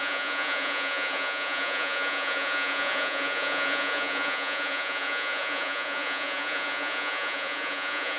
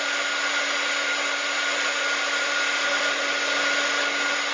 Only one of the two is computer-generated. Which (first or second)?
first